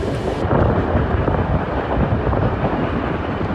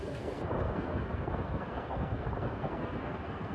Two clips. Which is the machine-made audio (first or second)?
second